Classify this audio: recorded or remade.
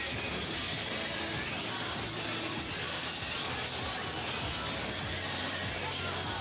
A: recorded